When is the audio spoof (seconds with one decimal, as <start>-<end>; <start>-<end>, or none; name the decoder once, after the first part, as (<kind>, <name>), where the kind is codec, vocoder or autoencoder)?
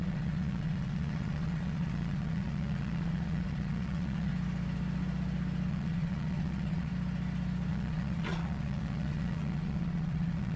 0.0-4.3 (vocoder, Vocos); 5.7-6.9; 7.7-10.6